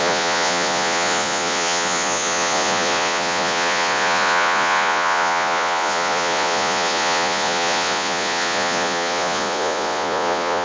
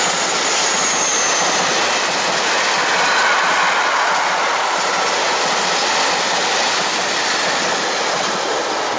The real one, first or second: second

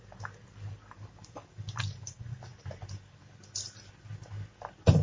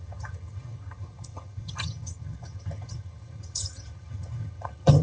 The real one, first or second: first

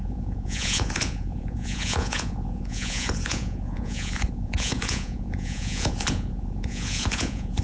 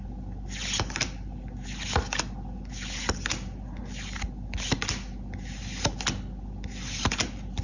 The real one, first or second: second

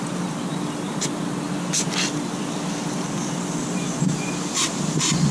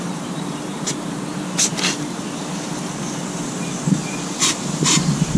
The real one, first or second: first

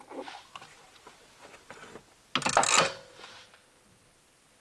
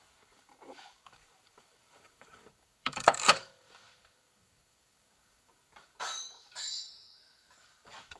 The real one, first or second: first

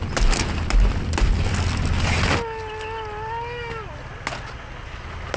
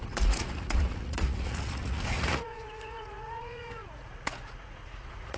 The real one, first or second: first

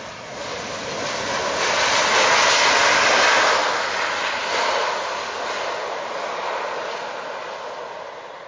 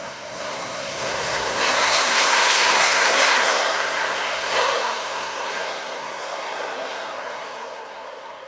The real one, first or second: first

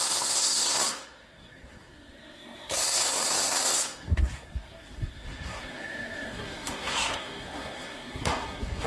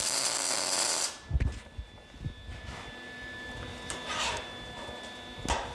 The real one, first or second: second